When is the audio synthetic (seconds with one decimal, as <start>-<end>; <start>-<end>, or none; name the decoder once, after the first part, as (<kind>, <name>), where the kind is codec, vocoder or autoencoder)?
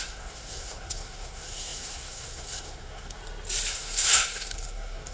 0.0-3.2 (codec, SNAC); 3.7-5.1